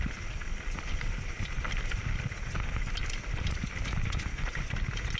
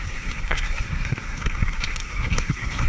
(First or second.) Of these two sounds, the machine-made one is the second